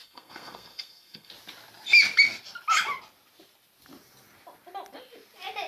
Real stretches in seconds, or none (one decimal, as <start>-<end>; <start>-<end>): 1.3-5.7